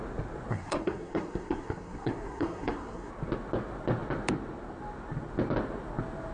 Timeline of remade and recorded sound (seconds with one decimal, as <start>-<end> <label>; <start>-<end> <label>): 0.0-0.5 recorded; 0.5-3.1 remade; 3.1-6.3 recorded